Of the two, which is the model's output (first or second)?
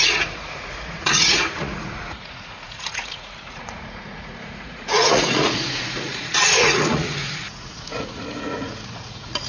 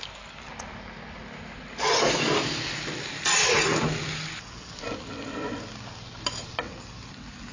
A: first